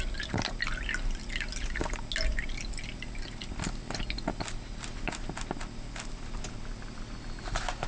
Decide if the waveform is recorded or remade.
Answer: recorded